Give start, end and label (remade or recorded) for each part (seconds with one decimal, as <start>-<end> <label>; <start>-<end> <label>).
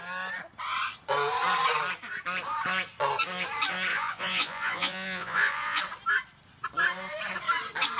0.0-3.9 recorded; 3.9-5.8 remade; 5.8-8.0 recorded